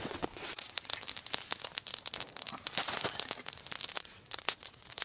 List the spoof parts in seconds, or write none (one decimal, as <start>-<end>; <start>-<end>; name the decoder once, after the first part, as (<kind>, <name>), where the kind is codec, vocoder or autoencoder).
0.0-0.9 (vocoder, WaveNeXt); 3.9-5.0